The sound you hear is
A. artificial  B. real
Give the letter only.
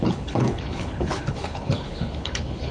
A